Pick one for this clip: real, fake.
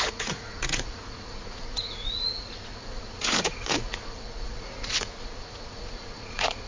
fake